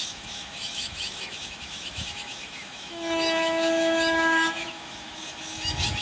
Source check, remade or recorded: remade